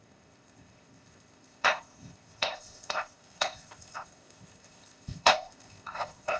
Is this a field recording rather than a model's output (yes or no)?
no